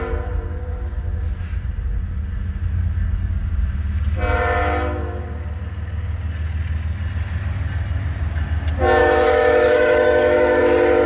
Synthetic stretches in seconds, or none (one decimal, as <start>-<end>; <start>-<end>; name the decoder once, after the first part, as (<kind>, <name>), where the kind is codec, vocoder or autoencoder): 9.0-10.6 (autoencoder, DAC-VAE)